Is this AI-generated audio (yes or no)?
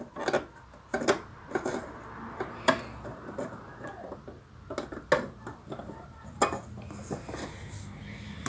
no